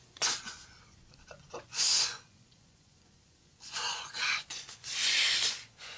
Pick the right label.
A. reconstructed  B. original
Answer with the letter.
A